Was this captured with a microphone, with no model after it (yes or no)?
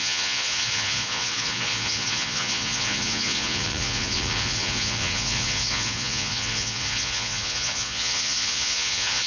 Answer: no